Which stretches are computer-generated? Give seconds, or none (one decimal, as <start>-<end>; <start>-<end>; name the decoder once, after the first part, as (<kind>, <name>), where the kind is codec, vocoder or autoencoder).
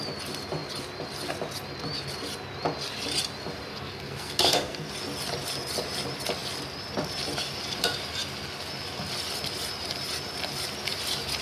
3.7-4.9 (codec, SNAC)